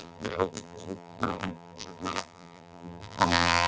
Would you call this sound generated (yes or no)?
yes